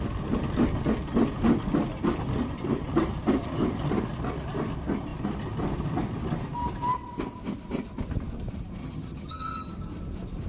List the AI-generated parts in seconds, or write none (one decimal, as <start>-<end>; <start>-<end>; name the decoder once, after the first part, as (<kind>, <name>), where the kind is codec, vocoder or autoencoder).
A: 8.8-9.7 (vocoder, HiFi-GAN)